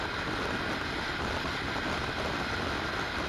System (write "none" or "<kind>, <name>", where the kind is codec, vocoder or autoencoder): none